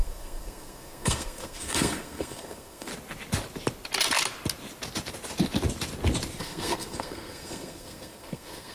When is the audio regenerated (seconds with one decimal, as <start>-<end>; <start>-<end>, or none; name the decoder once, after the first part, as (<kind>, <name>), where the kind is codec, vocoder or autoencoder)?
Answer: 0.0-2.9 (codec, SNAC); 6.4-8.7

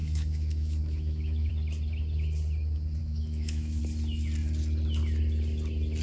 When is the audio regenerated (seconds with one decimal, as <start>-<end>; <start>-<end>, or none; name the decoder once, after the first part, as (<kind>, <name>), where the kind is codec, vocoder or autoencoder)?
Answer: 0.0-1.5 (autoencoder, DAC-VAE); 3.0-3.8

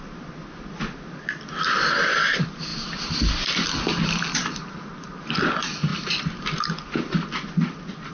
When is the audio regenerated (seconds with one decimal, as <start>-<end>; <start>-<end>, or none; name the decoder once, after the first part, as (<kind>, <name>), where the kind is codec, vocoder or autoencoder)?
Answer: none

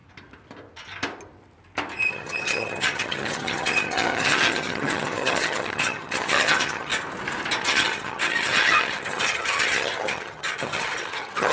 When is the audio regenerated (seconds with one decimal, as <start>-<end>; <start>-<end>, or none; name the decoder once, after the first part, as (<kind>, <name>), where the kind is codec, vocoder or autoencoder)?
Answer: 2.1-6.9 (vocoder, HiFi-GAN); 7.6-11.5

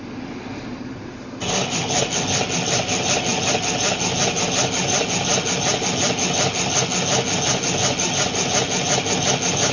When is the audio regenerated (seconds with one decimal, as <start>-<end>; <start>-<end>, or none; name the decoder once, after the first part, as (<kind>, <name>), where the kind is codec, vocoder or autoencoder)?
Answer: none

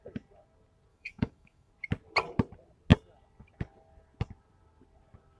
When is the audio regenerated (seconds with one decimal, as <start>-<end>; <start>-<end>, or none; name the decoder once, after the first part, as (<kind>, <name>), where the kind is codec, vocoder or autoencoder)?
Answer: 0.9-1.7 (autoencoder, DAC-VAE)